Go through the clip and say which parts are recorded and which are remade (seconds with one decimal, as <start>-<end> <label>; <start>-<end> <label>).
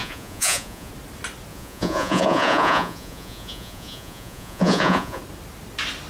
0.0-0.9 remade; 0.9-1.5 recorded; 1.5-5.2 remade; 5.2-6.1 recorded